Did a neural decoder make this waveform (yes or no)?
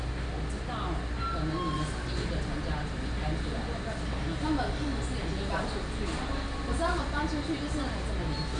no